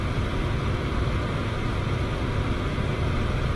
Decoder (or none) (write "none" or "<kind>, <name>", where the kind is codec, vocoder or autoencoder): vocoder, BigVGAN v2